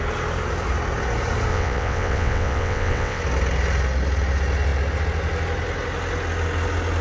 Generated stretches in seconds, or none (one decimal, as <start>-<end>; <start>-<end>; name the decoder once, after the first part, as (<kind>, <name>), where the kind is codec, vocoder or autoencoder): 1.5-3.2 (vocoder, WaveNeXt)